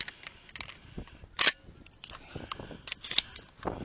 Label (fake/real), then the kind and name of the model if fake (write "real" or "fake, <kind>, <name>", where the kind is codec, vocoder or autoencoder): real